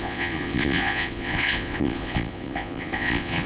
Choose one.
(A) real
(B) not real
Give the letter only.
B